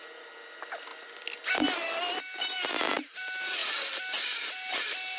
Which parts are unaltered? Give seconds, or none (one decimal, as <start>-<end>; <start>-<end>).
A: 0.0-5.2